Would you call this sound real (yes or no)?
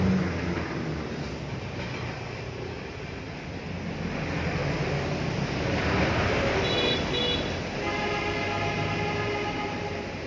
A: yes